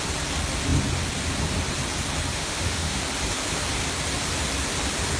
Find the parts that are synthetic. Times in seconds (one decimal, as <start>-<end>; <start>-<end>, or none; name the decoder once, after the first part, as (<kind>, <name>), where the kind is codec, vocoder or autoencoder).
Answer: 2.3-3.0 (autoencoder, DAC-VAE)